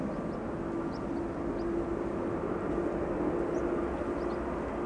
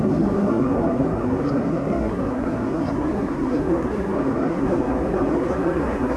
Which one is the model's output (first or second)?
second